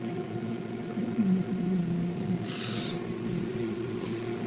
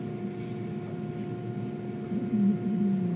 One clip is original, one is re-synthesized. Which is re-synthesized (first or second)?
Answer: first